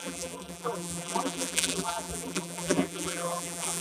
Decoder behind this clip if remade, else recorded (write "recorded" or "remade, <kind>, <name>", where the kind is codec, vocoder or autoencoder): remade, vocoder, BigVGAN v2